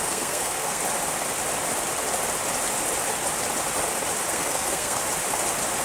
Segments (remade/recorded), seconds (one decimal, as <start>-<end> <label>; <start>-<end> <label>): 0.0-0.8 remade; 0.8-4.3 recorded; 4.3-5.0 remade; 5.0-5.8 recorded